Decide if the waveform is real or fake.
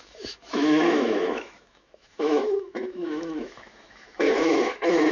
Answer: fake